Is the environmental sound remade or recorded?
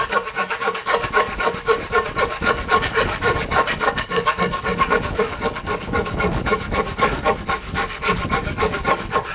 remade